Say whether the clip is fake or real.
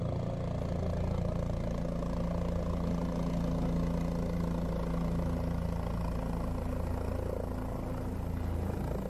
real